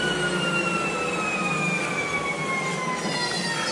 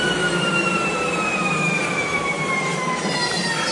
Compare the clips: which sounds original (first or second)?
first